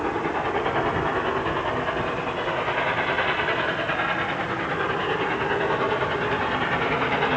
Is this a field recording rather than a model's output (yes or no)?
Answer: yes